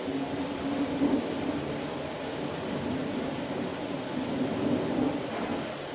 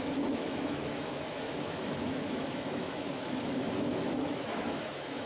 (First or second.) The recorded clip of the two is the first